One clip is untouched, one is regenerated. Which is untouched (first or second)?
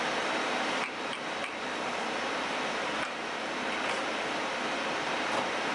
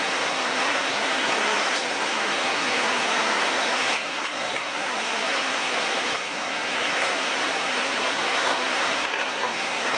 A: first